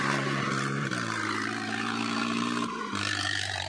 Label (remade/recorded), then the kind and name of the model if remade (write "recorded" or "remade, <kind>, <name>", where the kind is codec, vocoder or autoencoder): remade, vocoder, BigVGAN v2